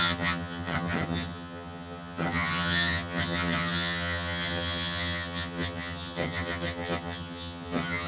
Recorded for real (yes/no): no